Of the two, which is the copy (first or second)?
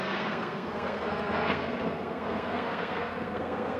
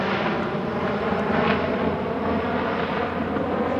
first